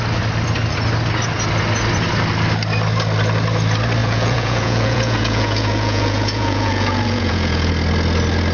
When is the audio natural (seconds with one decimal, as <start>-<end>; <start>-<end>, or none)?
0.0-4.0; 7.7-8.5